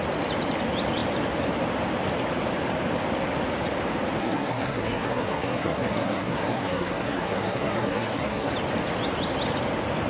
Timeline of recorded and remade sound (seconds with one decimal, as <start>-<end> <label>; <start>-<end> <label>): 0.0-4.2 recorded; 4.2-8.5 remade; 8.5-10.1 recorded